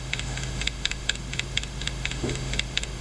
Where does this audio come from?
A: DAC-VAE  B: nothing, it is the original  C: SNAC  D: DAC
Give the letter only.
A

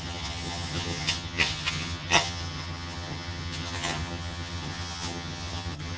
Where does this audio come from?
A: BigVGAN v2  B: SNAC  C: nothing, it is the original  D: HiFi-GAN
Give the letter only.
D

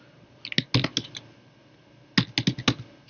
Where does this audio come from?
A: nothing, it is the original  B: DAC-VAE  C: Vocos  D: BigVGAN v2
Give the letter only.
A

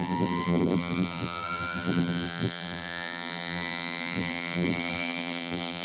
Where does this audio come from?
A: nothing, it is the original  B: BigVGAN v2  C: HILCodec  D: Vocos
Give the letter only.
B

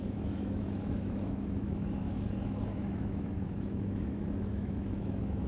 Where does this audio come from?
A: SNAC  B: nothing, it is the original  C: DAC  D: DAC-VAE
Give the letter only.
D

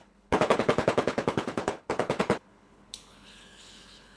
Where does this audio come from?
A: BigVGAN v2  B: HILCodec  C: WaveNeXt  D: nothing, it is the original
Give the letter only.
B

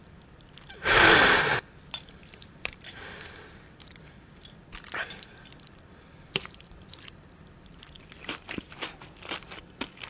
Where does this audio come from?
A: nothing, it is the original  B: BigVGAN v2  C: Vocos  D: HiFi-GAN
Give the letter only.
B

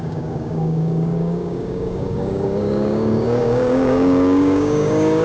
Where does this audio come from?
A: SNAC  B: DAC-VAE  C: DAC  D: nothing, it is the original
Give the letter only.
C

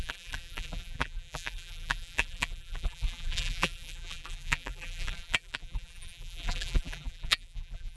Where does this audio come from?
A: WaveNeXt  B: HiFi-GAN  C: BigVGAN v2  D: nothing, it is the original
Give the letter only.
C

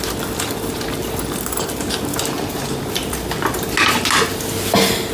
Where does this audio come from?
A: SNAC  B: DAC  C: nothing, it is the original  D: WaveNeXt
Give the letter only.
C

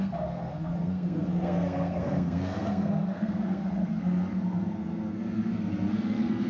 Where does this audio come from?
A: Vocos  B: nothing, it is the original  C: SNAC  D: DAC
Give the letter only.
C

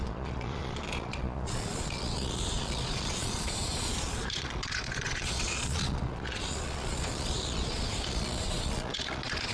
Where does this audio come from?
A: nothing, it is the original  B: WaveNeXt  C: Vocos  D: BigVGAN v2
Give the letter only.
C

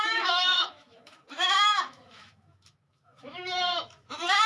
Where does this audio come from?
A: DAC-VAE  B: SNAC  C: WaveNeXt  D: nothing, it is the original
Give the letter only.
A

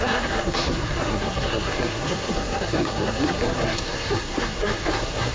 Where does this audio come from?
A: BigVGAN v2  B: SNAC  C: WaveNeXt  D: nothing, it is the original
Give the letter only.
B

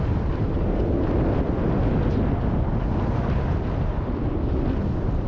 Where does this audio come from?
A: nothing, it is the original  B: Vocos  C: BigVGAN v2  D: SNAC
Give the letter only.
A